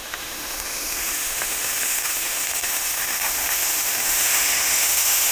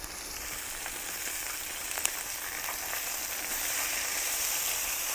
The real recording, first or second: second